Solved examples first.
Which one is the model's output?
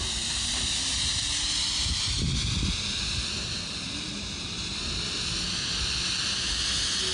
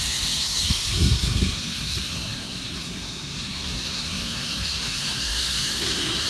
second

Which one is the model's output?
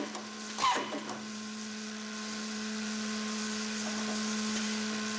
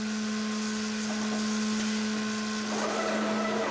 first